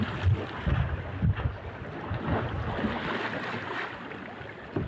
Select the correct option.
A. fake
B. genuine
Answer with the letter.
B